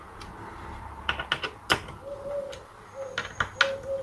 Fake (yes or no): no